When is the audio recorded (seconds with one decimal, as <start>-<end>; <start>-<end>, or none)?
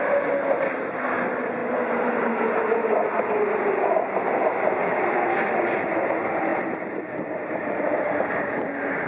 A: 0.0-1.6; 2.3-4.8; 5.6-6.5; 7.3-9.1